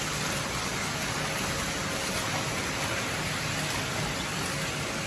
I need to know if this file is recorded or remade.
recorded